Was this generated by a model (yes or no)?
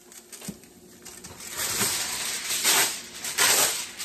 no